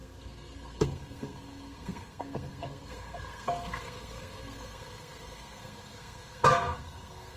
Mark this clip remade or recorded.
remade